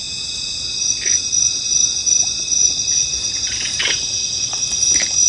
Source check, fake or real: real